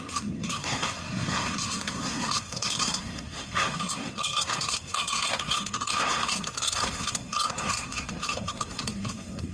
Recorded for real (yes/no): no